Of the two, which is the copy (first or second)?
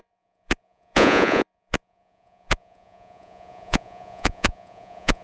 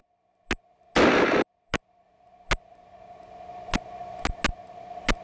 first